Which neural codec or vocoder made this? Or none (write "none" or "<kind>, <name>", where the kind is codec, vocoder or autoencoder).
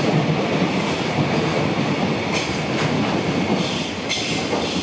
none